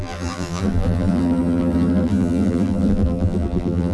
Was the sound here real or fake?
fake